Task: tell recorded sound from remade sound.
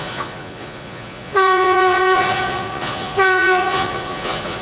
remade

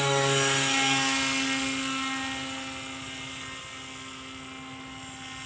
recorded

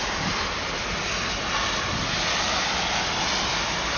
recorded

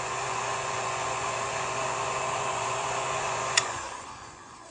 remade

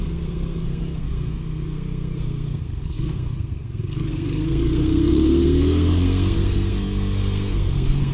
remade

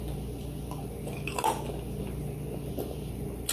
recorded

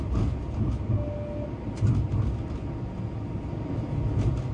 recorded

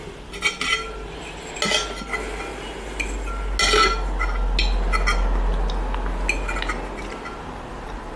recorded